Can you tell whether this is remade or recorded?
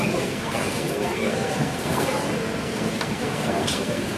remade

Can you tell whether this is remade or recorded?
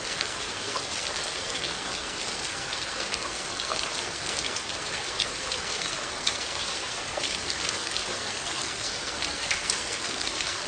remade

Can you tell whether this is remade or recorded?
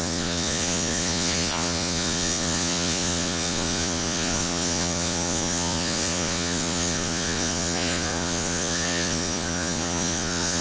remade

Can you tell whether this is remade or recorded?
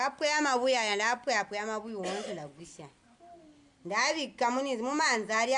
recorded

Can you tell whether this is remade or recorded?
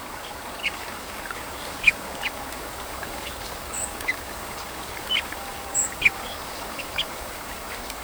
remade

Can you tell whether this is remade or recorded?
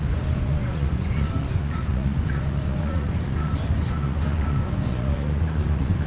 remade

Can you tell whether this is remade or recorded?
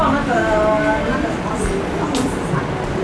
recorded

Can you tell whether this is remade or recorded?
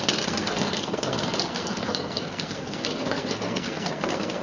remade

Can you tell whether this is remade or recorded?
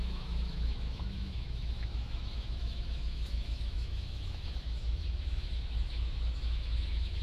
remade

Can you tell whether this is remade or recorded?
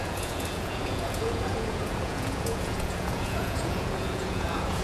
remade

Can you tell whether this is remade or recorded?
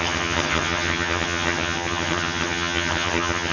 remade